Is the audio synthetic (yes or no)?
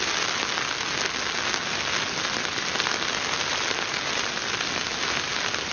no